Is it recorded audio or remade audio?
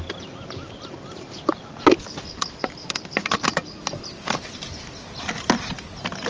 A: recorded